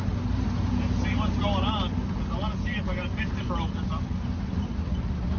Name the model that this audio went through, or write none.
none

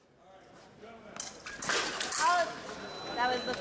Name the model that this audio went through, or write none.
none